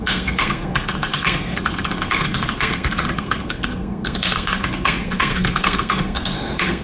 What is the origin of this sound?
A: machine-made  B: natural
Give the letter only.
A